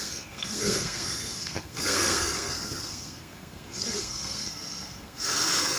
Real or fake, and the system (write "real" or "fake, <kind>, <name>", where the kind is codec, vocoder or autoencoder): fake, codec, SNAC